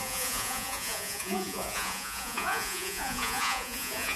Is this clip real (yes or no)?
no